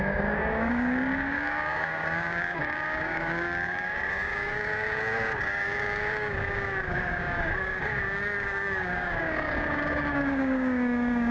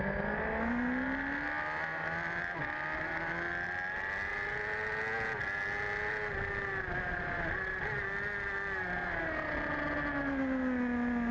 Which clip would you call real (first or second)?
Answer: second